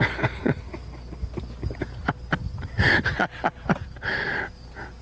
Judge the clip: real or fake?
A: real